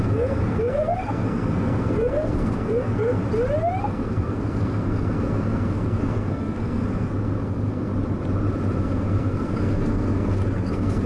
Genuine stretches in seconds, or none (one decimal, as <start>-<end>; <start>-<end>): 3.2-3.8; 7.9-8.8